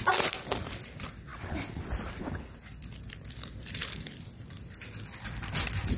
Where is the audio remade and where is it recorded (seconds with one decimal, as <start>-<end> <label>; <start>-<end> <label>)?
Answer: 0.0-1.3 recorded; 1.3-4.9 remade; 4.9-6.0 recorded